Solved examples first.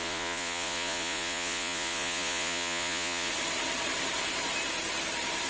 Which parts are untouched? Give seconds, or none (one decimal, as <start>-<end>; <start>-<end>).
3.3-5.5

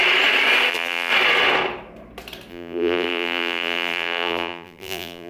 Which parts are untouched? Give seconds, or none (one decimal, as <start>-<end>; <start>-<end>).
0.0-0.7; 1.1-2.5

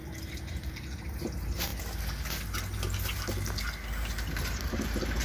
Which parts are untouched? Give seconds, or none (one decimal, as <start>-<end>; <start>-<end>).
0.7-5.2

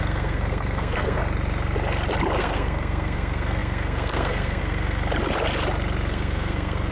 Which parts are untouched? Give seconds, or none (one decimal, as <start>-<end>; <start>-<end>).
1.2-2.4; 5.0-6.1

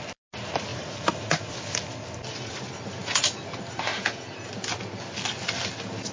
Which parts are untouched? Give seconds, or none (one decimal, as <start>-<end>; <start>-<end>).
0.0-3.9; 4.5-6.1

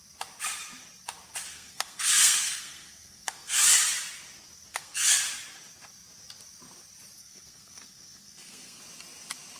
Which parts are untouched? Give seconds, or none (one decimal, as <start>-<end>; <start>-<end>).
0.0-1.5; 3.6-4.7; 5.2-7.2; 8.8-9.6